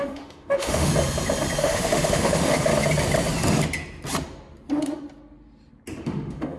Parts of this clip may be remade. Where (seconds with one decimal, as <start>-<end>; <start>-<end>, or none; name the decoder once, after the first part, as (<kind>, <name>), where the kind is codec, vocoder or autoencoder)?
0.0-0.9 (autoencoder, DAC-VAE); 1.6-2.7; 6.0-6.6